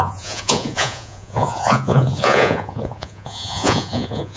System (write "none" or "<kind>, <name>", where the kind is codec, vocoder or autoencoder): vocoder, Vocos